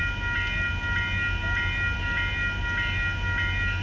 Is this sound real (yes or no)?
yes